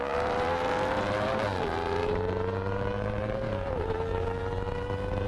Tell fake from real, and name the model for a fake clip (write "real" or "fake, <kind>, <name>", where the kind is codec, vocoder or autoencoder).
fake, vocoder, BigVGAN v2